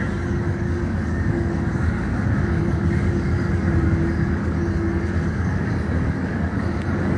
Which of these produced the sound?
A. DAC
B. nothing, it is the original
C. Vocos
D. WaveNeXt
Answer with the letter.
A